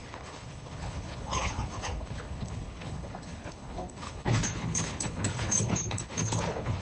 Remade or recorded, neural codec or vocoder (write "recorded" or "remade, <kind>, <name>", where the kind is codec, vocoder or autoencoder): remade, codec, HILCodec